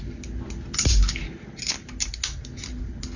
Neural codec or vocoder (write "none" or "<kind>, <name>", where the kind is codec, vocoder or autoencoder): none